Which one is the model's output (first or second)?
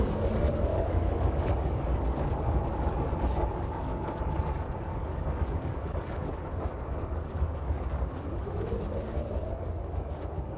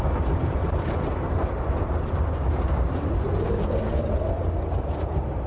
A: first